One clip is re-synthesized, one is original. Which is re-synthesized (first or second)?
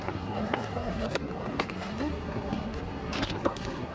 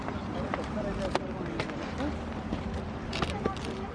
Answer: first